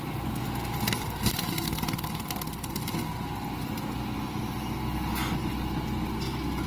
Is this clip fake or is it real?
real